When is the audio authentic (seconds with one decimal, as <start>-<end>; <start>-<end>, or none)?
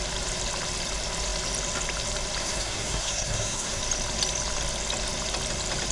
0.0-2.4; 3.8-5.9